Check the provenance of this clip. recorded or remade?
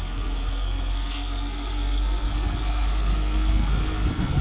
remade